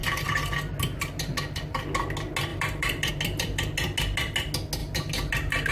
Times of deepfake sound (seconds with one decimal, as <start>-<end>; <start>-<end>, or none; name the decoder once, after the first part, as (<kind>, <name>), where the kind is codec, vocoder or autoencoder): 2.5-3.1 (vocoder, BigVGAN v2); 4.8-5.7